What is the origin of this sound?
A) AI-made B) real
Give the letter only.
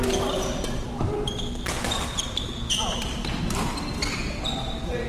B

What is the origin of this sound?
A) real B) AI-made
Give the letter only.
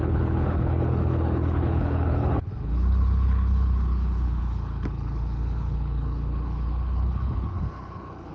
B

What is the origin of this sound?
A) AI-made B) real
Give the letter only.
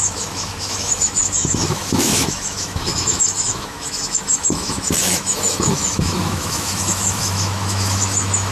A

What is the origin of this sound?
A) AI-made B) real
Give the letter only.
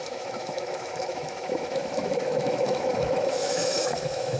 A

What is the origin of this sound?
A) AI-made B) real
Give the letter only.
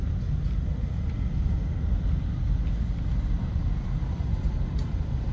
B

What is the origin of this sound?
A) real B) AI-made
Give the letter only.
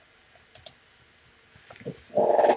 A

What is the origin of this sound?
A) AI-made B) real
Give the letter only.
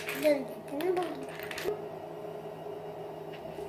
B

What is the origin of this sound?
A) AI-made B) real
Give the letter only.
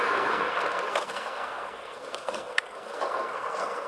A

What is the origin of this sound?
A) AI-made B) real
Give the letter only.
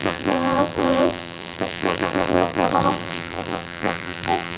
A